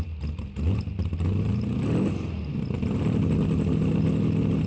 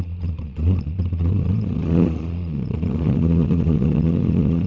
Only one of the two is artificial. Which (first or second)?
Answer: second